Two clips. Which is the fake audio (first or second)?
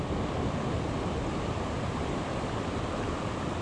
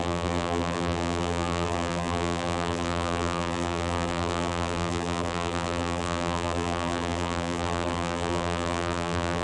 second